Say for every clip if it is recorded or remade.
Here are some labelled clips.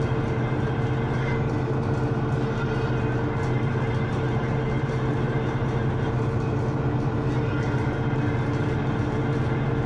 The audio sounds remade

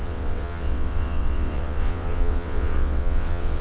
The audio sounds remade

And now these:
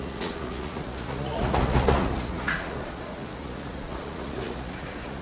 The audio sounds remade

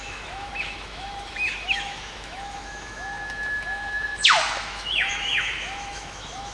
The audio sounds remade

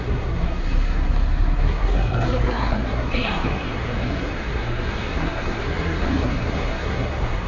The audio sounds remade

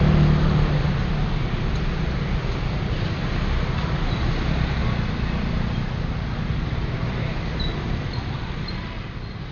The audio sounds recorded